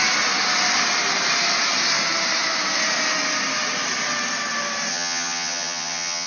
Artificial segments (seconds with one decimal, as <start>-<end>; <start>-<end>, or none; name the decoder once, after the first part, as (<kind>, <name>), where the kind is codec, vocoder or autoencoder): 4.9-6.3 (vocoder, HiFi-GAN)